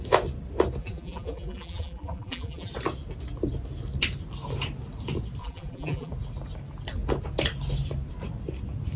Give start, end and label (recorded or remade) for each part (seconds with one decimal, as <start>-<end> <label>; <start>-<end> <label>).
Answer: 0.0-0.8 recorded; 0.8-2.7 remade; 2.7-5.4 recorded; 5.4-6.1 remade; 6.1-9.0 recorded